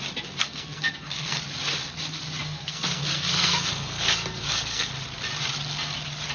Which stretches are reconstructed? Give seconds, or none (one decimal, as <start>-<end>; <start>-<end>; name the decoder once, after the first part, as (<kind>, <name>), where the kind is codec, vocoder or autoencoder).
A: 0.4-1.4 (codec, SNAC); 2.4-4.9